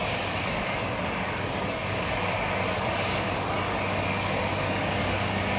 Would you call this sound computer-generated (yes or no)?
yes